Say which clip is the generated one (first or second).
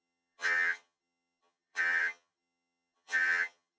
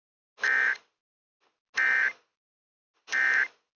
first